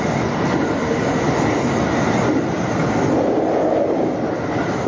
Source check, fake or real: real